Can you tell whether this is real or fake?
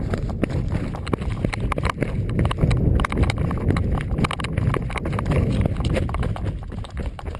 real